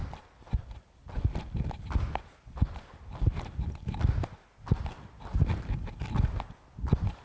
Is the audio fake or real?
real